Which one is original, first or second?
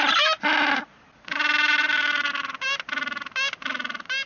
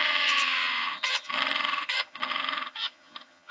first